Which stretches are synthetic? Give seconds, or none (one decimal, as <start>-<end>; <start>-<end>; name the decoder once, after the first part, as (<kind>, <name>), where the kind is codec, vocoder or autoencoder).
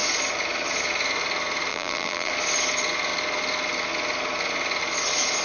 1.7-2.3 (vocoder, BigVGAN v2)